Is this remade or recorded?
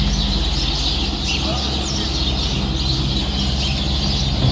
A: recorded